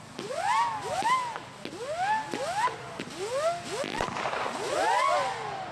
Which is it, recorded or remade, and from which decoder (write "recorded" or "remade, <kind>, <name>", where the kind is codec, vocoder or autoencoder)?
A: recorded